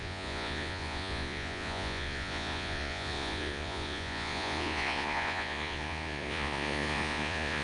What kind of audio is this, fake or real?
fake